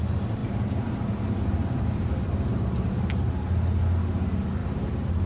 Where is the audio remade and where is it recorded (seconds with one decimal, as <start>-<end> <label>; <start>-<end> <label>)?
0.0-0.4 recorded; 0.4-2.9 remade; 2.9-4.6 recorded; 4.6-5.3 remade